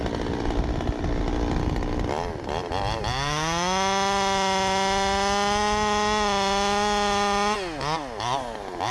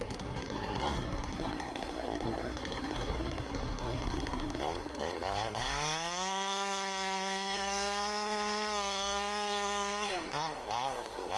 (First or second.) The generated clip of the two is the second